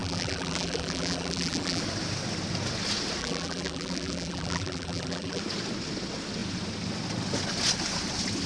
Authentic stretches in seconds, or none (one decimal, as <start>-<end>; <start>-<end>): 1.8-3.2; 5.4-8.5